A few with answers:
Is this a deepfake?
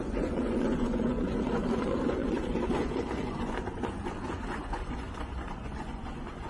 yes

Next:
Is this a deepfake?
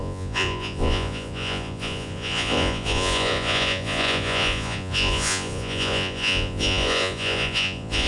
yes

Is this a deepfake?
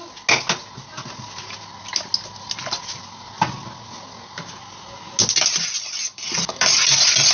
no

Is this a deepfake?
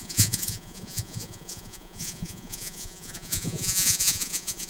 yes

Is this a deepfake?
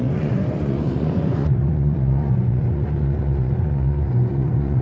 yes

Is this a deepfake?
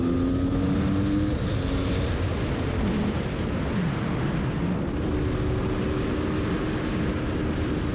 no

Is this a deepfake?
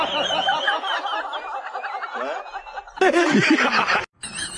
no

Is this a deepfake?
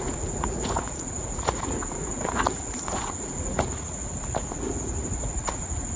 yes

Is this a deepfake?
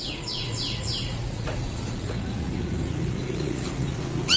yes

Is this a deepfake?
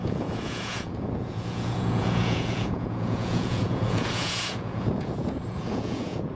yes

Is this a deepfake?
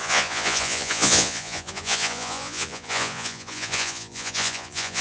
yes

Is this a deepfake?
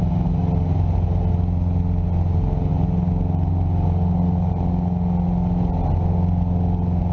no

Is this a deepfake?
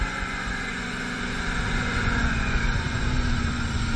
yes